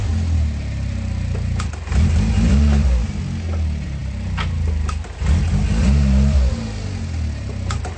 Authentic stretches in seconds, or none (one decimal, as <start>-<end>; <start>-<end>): 0.0-8.0